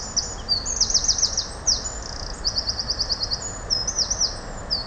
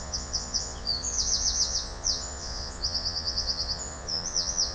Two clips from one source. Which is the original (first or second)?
first